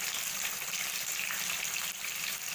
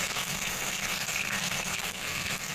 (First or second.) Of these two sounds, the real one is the first